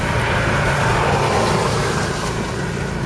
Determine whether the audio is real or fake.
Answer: real